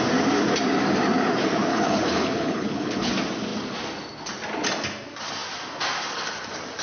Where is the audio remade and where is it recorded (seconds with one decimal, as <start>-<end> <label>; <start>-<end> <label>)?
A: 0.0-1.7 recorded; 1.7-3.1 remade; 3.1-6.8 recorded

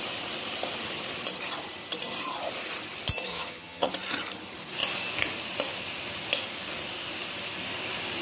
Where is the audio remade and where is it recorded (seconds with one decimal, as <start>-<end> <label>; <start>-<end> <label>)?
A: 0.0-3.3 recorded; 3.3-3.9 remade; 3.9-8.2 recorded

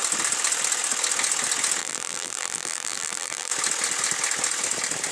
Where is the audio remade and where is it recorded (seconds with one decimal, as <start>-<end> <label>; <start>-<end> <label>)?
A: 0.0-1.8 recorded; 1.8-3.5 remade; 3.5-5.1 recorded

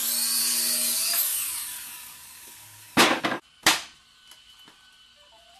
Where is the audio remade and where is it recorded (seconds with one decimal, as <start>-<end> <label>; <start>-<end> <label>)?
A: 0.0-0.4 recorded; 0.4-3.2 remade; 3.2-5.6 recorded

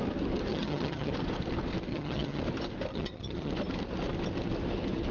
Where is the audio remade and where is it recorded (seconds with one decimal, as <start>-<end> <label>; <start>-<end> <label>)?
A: 0.0-0.5 recorded; 0.5-1.1 remade; 1.1-1.9 recorded; 1.9-2.4 remade; 2.4-2.9 recorded; 2.9-3.5 remade; 3.5-5.1 recorded